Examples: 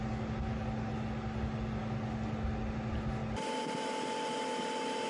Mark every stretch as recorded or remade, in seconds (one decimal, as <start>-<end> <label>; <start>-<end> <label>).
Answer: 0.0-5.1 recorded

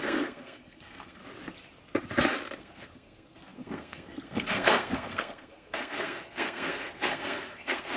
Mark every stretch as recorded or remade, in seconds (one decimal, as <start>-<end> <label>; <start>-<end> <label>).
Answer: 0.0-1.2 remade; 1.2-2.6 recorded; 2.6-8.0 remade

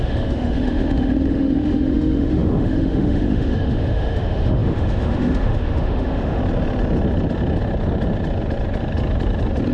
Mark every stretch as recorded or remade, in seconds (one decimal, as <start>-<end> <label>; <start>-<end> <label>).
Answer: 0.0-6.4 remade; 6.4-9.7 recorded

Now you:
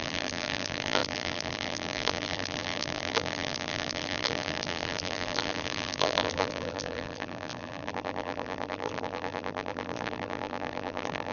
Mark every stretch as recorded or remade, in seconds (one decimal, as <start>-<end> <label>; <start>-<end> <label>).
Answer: 0.0-11.3 remade